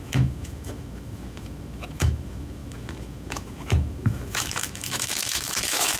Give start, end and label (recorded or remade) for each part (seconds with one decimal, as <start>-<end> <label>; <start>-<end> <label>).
0.0-6.0 remade